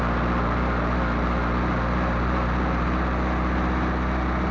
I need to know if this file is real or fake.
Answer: real